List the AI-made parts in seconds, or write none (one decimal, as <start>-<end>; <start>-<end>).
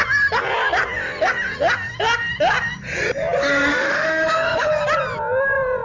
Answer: 3.7-4.7